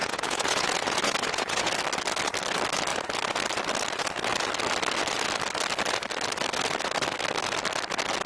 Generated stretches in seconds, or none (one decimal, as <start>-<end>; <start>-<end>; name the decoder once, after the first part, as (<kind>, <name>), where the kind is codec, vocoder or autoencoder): 0.0-1.7 (vocoder, Vocos)